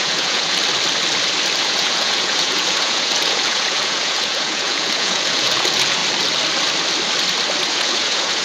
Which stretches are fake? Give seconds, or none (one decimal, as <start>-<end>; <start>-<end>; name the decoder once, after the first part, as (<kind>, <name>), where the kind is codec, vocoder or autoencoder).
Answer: 0.0-0.6 (vocoder, Vocos); 1.6-6.0; 7.7-8.4